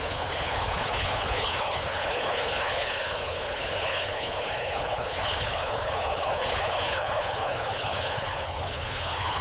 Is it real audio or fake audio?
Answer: fake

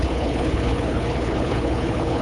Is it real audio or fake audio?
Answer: fake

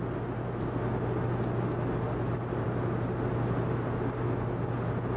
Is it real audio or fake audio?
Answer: real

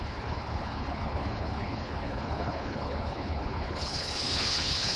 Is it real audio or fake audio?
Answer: fake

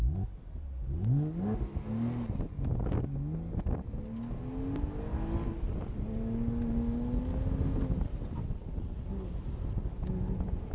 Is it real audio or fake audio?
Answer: real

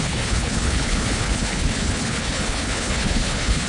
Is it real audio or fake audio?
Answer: fake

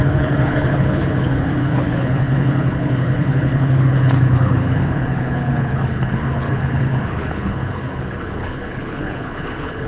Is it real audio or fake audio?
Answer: fake